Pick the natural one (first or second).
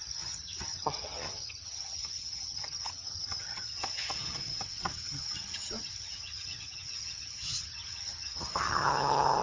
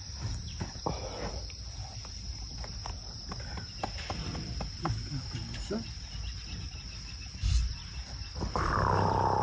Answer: second